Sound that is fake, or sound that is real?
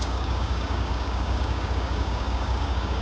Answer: fake